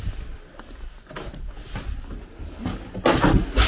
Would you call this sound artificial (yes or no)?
no